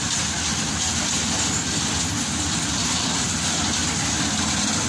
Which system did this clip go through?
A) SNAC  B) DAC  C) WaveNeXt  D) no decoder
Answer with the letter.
D